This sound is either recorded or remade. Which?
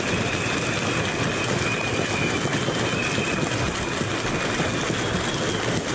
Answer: recorded